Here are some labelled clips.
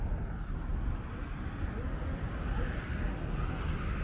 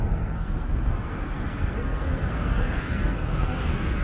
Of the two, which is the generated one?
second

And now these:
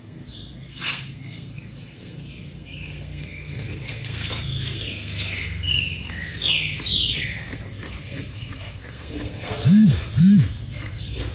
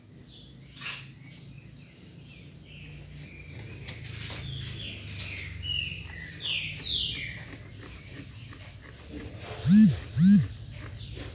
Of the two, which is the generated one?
first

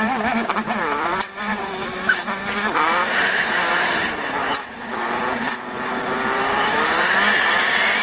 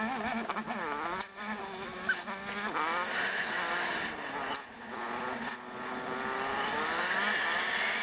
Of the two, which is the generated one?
first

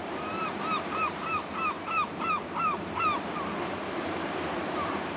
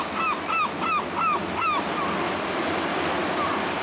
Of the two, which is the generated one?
first